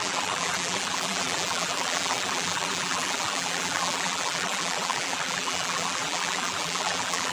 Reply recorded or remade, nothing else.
remade